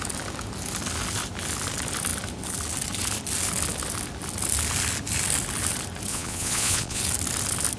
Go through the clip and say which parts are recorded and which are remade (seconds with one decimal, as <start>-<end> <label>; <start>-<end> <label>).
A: 0.0-6.1 recorded; 6.1-7.0 remade; 7.0-7.8 recorded